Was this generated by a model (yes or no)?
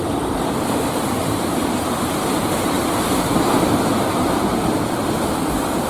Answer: yes